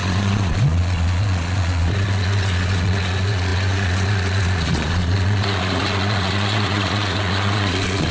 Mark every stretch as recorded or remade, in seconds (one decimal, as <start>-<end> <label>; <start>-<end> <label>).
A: 0.0-8.1 remade